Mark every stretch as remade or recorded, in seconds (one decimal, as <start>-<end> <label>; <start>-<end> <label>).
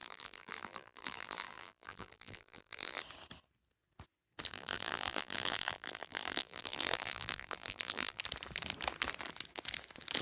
0.0-3.0 remade; 3.0-4.5 recorded; 4.5-8.2 remade; 8.2-10.2 recorded